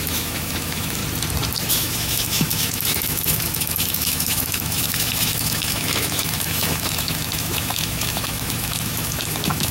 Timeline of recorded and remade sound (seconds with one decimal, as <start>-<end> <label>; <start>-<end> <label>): 0.0-1.0 remade; 1.0-1.7 recorded; 1.7-9.7 remade